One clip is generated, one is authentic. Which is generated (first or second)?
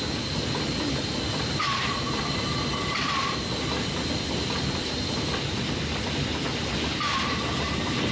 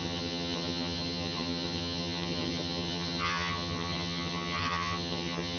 second